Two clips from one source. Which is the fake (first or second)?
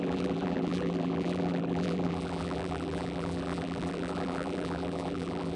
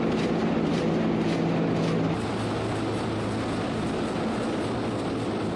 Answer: first